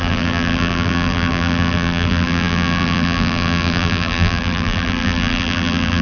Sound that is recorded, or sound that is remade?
remade